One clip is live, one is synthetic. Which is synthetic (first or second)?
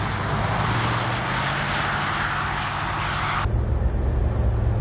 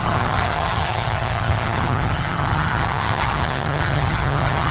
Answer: second